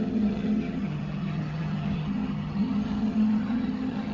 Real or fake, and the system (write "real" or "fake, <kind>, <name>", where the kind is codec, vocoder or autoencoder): fake, vocoder, HiFi-GAN